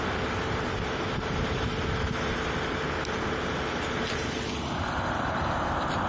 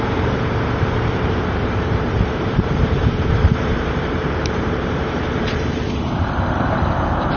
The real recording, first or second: first